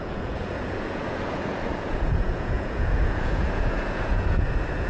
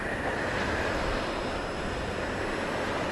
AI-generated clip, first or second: first